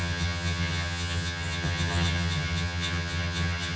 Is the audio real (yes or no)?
no